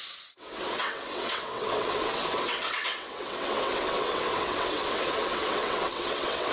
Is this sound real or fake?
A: fake